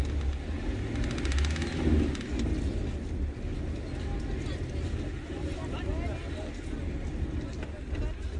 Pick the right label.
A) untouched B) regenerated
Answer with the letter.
A